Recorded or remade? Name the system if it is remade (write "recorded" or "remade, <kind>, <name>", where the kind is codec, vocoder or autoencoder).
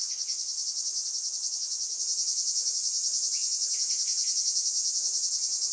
remade, vocoder, Vocos